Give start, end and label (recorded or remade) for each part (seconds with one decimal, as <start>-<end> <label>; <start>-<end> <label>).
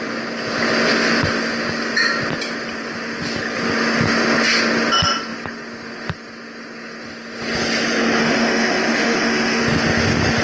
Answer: 0.0-8.2 recorded; 8.2-9.6 remade; 9.6-10.4 recorded